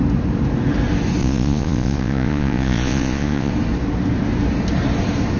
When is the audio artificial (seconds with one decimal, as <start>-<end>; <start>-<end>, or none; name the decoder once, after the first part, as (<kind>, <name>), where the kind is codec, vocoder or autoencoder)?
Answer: 1.2-3.5 (vocoder, Vocos)